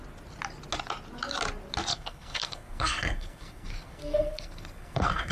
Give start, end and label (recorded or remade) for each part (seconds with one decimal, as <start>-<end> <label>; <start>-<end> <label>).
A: 0.0-1.9 recorded; 1.9-5.3 remade